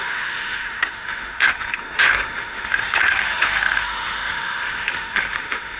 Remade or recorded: remade